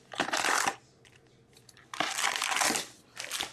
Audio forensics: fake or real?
real